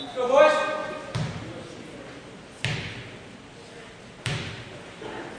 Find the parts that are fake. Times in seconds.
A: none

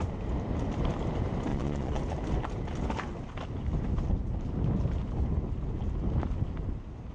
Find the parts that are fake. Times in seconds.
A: 1.5-2.0 (vocoder, Vocos)

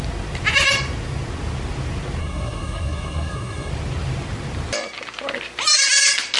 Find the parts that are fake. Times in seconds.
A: 2.2-3.7 (codec, SNAC)

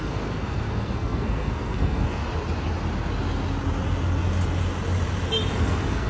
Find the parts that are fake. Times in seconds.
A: 0.0-2.2 (codec, SNAC); 5.6-6.1

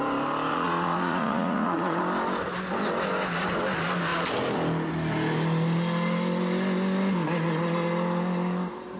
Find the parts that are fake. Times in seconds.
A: 0.5-2.0 (vocoder, Vocos)

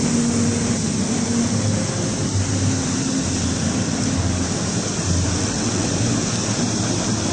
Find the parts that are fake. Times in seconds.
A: 5.4-5.9 (vocoder, WaveNeXt)